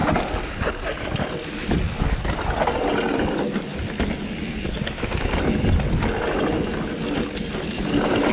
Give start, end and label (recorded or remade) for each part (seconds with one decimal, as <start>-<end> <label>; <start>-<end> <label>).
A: 0.0-8.3 recorded